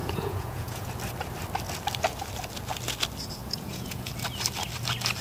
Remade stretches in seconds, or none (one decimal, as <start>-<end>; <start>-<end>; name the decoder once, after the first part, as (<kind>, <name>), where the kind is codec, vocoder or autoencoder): 0.0-0.9 (vocoder, Vocos); 3.4-4.1